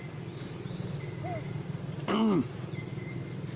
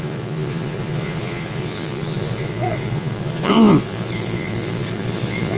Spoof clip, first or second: second